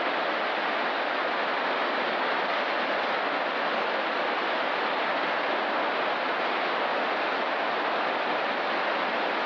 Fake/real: real